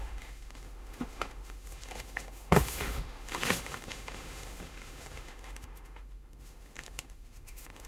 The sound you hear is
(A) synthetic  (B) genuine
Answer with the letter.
A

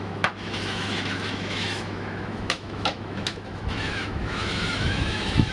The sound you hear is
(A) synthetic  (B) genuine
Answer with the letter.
A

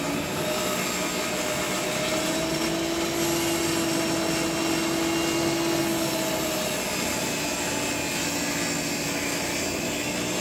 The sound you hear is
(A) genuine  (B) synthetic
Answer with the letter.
A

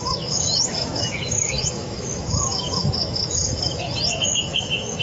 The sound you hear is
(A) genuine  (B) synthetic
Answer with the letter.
B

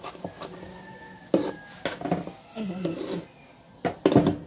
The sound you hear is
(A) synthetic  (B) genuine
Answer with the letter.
B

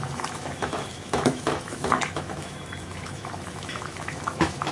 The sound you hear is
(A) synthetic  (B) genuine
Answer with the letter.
A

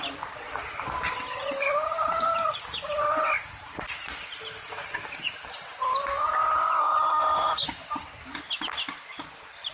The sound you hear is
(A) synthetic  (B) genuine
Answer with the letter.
B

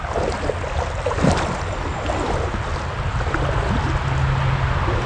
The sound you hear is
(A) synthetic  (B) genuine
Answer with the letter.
B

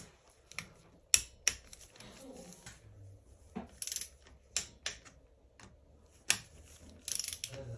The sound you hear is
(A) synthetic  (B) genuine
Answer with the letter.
B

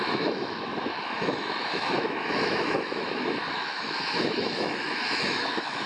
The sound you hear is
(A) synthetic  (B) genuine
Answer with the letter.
A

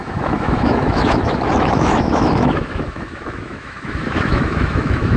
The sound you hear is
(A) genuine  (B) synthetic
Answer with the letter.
B